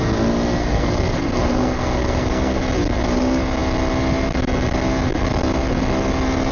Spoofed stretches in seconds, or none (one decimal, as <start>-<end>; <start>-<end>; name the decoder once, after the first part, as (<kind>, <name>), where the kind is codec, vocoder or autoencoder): 0.6-2.6 (codec, SNAC)